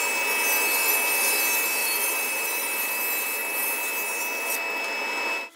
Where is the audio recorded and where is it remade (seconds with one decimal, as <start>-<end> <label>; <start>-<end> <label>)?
0.0-1.8 recorded; 1.8-2.9 remade; 2.9-5.6 recorded